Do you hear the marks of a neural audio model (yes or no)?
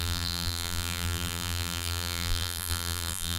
yes